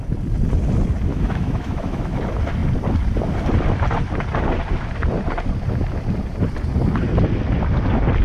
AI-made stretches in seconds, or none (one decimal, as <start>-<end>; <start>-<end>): 1.1-2.2